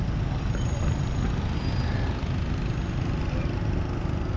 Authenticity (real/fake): real